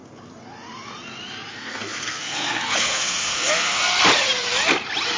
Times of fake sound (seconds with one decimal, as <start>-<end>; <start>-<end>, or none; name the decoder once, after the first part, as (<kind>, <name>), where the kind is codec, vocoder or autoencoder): 1.5-3.8 (codec, SNAC)